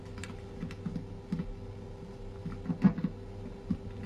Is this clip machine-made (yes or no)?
no